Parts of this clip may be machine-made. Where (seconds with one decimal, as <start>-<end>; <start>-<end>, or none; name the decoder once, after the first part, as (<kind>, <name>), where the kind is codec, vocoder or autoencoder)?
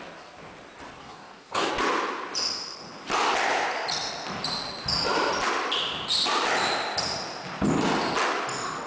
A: 1.0-1.7 (codec, DAC)